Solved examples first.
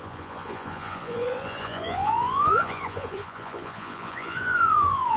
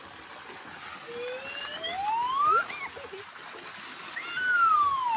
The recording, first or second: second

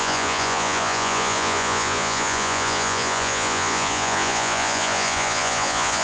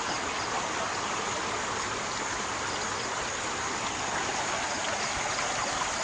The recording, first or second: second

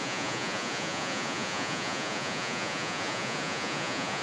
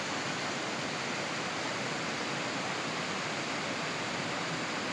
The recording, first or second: second